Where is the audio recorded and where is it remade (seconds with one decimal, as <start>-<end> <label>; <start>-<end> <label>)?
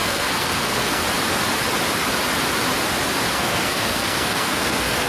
0.0-1.0 remade; 1.0-3.3 recorded; 3.3-5.1 remade